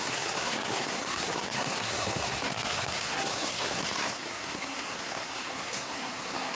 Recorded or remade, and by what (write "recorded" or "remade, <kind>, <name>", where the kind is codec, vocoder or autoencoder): remade, codec, SNAC